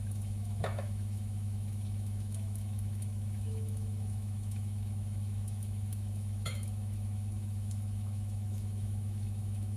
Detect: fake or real fake